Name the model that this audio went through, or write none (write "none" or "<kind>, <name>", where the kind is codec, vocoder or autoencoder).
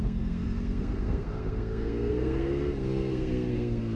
codec, SNAC